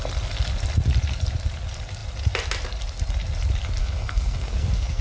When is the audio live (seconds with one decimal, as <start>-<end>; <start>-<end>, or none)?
0.0-3.8